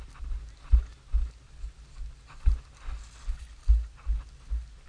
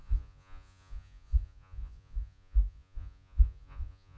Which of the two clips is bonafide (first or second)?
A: first